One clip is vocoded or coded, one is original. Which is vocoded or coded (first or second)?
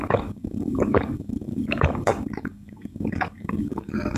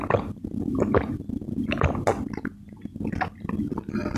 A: first